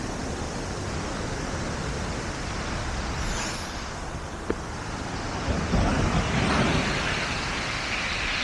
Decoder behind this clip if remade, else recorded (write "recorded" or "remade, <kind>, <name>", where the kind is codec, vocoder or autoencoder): recorded